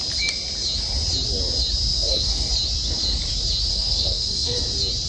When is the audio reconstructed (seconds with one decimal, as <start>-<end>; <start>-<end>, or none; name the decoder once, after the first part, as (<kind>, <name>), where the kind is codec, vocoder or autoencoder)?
1.9-2.5 (codec, SNAC); 3.7-4.6